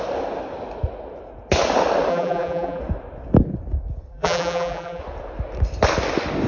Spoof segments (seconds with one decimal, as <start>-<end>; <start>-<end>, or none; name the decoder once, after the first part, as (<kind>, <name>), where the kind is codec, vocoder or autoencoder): 2.1-2.8 (vocoder, BigVGAN v2); 4.1-5.0